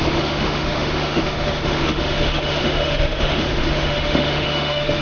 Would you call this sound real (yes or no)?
no